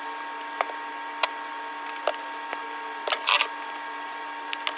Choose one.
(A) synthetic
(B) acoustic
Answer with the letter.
B